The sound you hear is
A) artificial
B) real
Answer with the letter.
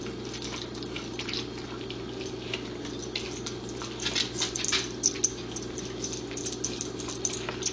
B